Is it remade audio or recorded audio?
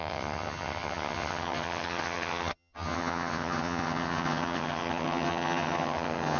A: remade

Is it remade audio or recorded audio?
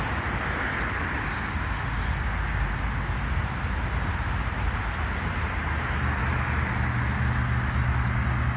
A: recorded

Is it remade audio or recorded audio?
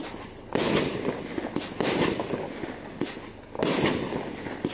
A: recorded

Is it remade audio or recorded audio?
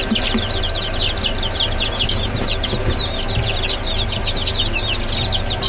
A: recorded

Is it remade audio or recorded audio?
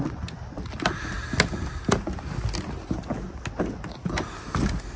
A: recorded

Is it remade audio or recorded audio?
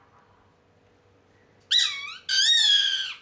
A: recorded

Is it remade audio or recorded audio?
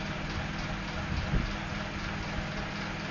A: recorded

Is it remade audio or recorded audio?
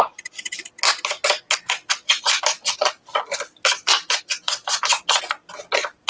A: recorded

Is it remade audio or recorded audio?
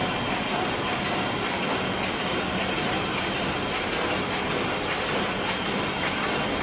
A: recorded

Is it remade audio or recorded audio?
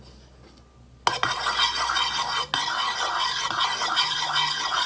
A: recorded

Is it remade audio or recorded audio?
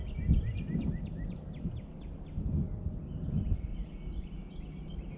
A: recorded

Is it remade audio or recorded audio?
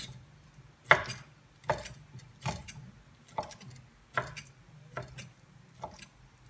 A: recorded